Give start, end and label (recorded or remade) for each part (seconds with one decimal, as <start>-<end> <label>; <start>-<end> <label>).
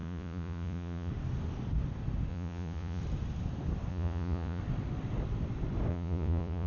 0.0-1.1 remade; 1.1-2.3 recorded; 2.3-3.0 remade; 3.0-3.9 recorded; 3.9-4.6 remade; 4.6-5.9 recorded; 5.9-6.7 remade